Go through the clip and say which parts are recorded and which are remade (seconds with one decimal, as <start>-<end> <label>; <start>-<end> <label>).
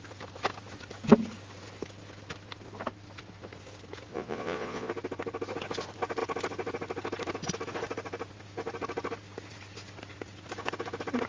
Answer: 0.0-4.1 recorded; 4.1-4.9 remade; 4.9-11.3 recorded